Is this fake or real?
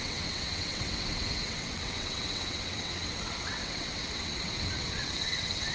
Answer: fake